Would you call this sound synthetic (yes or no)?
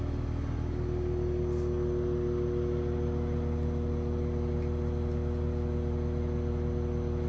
no